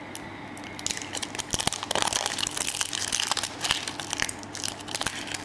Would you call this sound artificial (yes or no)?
no